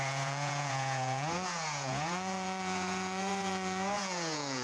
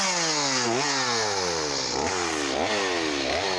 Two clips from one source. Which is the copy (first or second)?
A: first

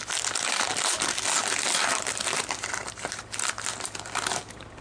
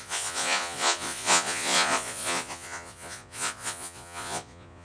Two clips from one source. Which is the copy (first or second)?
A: second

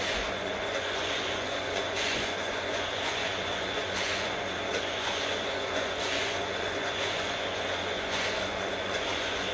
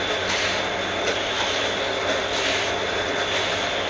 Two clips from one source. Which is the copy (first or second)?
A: first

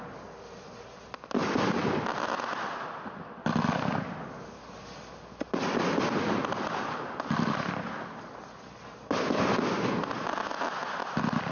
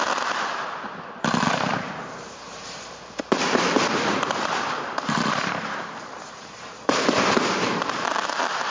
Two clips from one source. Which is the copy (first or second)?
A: second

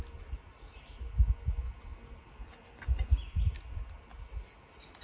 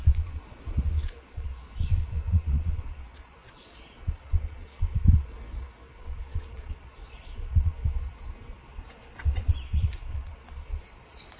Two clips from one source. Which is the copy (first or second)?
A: second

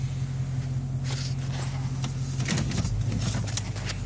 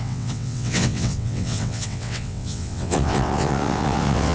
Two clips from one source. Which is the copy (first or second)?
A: second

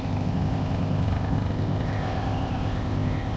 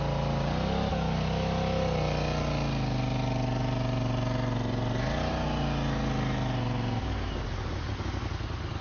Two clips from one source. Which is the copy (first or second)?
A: first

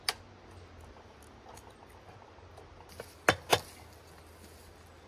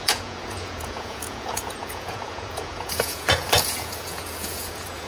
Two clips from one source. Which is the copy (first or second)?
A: second